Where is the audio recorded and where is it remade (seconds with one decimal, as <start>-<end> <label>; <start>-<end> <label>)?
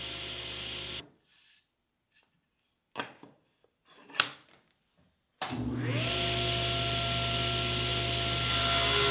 0.0-9.1 recorded